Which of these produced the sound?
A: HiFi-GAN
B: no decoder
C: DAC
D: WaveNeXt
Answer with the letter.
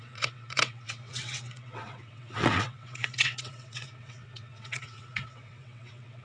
D